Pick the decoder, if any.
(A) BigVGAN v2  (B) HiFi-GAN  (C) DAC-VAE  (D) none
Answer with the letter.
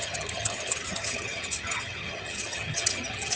B